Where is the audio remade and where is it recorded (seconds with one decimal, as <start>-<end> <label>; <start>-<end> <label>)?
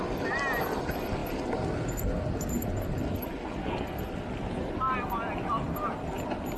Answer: 0.0-6.6 recorded